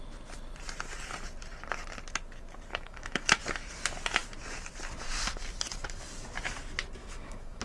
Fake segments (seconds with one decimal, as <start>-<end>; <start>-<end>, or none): 2.7-3.4; 7.0-7.6